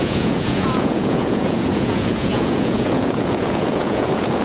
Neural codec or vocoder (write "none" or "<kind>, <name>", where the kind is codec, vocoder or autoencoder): vocoder, Vocos